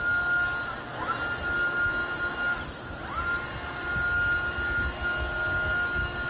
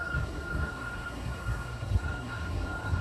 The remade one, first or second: second